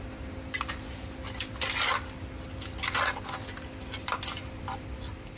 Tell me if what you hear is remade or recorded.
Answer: recorded